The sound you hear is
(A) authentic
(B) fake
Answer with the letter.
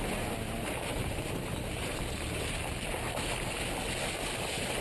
A